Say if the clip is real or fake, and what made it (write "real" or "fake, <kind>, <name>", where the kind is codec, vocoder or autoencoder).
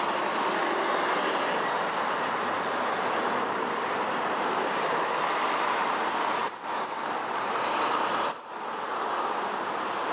real